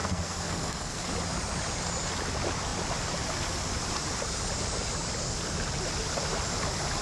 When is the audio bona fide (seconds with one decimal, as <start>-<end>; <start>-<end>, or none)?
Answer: 1.1-7.0

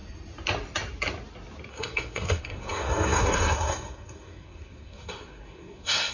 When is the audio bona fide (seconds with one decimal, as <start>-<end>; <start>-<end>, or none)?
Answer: 0.0-1.7

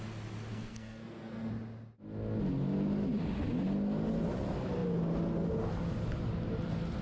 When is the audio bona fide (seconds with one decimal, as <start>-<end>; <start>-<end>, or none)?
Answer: 0.0-0.5; 1.5-7.0